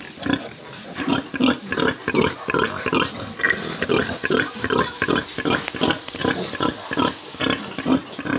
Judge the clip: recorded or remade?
recorded